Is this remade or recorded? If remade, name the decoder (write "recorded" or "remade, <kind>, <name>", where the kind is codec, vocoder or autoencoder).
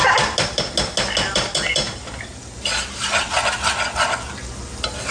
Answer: recorded